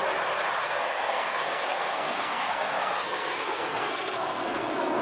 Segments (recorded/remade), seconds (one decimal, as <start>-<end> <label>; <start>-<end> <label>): 0.0-0.6 recorded; 0.6-5.0 remade

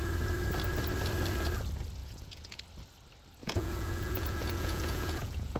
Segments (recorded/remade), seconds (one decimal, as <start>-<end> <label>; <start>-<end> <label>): 0.0-2.0 recorded; 2.0-2.6 remade; 2.6-3.4 recorded; 3.4-5.6 remade